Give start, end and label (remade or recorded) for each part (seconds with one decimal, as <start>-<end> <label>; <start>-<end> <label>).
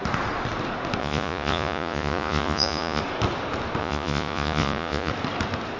0.0-1.0 recorded; 1.0-3.0 remade; 3.0-3.8 recorded; 3.8-5.1 remade; 5.1-5.8 recorded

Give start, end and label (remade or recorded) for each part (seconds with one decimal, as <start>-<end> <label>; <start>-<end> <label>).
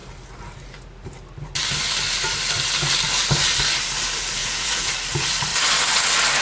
0.0-4.4 recorded; 4.4-4.9 remade; 4.9-6.4 recorded